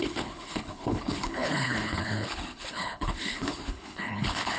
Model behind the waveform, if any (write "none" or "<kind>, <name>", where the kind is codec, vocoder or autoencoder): codec, HILCodec